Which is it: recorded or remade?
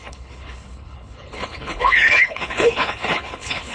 remade